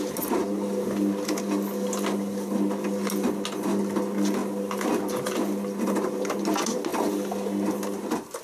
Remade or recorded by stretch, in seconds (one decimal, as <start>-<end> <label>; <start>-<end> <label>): 0.0-8.4 recorded